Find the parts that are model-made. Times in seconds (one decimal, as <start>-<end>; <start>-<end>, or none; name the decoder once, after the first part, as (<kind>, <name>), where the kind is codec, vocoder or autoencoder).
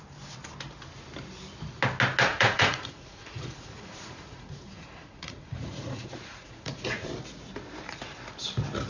2.3-7.1 (vocoder, Vocos)